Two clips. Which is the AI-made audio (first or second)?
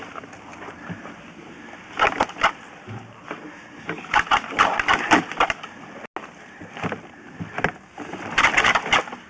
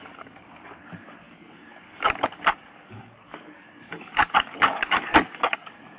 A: second